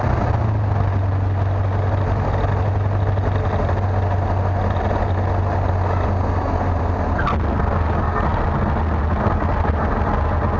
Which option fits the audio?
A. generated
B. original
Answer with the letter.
B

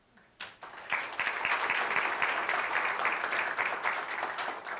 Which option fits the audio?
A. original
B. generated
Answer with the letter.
A